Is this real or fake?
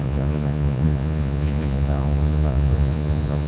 fake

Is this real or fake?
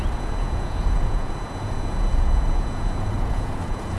fake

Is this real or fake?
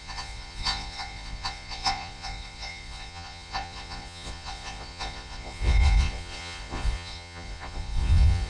fake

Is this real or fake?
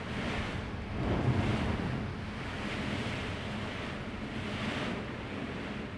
real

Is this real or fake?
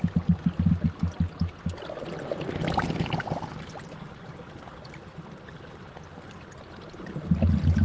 real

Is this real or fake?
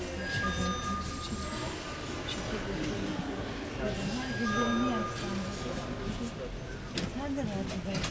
real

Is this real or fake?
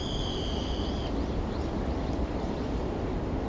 fake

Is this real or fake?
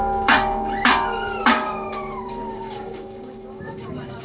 fake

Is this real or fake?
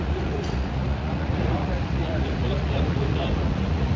fake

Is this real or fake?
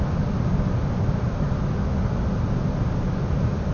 real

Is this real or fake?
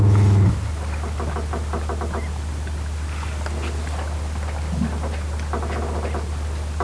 real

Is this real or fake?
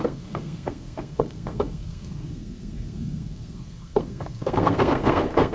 fake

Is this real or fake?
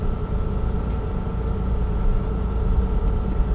real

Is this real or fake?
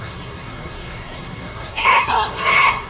fake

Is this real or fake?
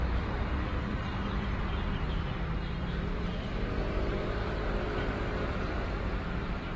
fake